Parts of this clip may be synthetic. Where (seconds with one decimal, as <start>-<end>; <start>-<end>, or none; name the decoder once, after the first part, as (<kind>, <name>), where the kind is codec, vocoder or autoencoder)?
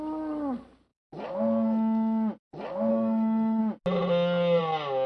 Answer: 2.9-3.6 (codec, SNAC)